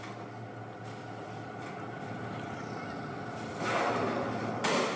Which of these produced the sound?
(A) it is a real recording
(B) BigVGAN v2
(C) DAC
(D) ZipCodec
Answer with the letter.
A